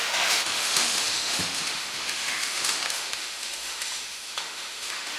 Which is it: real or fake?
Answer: fake